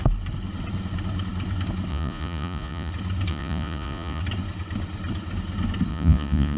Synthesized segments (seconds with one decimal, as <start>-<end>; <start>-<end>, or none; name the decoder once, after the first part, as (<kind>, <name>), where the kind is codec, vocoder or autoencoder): 1.9-2.9 (vocoder, Vocos); 3.3-4.2; 5.9-6.6